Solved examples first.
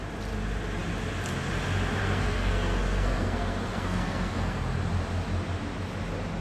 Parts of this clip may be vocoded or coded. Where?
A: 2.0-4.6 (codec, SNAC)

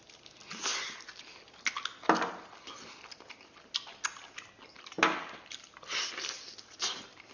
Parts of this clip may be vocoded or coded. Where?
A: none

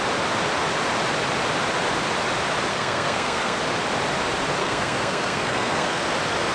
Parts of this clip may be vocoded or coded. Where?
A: 2.7-3.6 (codec, SNAC); 4.6-6.0

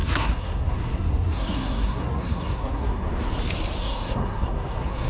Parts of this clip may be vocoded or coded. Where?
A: 0.0-3.1 (codec, SNAC); 3.8-5.1

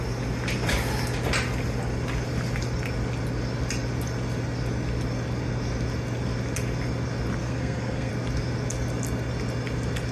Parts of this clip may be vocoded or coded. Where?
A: 7.4-8.1 (codec, SNAC)

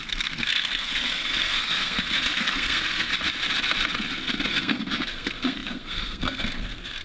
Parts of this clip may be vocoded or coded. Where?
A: 0.0-3.1 (codec, SNAC); 4.5-7.0

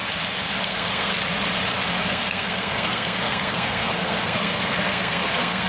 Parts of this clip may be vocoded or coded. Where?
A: 0.6-1.1 (codec, SNAC); 2.0-5.7